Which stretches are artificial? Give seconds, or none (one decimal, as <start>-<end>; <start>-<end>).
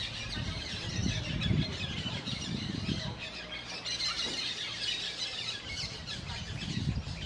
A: none